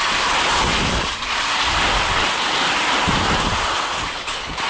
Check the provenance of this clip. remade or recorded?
remade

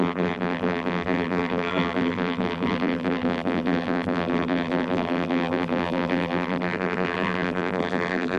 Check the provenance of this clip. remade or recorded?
remade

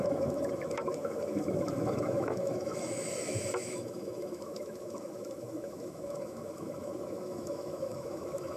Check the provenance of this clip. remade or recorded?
remade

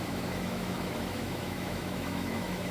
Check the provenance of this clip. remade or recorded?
remade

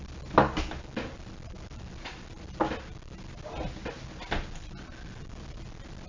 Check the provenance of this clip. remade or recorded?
recorded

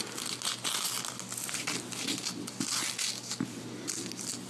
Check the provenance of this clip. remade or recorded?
recorded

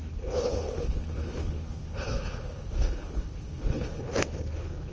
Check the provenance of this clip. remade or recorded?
remade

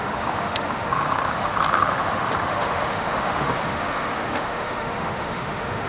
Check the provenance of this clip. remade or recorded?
remade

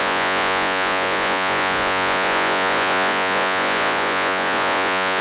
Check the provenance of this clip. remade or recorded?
remade